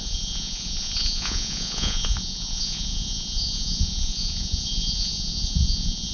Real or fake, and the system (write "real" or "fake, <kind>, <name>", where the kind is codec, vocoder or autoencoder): fake, vocoder, Vocos